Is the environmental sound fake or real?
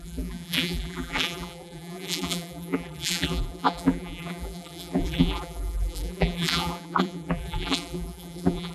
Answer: fake